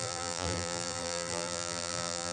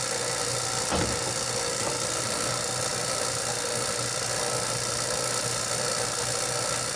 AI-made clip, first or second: first